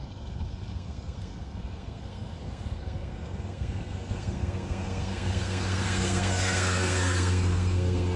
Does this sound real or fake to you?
fake